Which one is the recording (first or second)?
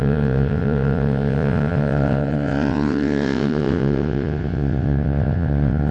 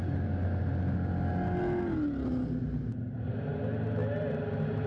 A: second